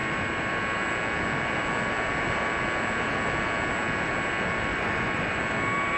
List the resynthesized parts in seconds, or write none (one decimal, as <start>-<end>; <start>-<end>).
4.7-5.4